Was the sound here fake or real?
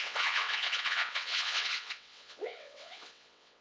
fake